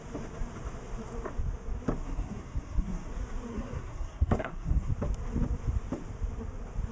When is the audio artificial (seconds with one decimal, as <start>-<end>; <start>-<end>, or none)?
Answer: 2.0-3.1; 3.5-4.9